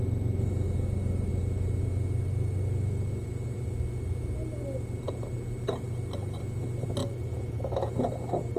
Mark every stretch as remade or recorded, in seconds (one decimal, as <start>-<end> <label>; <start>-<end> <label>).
0.0-7.0 recorded; 7.0-7.9 remade; 7.9-8.6 recorded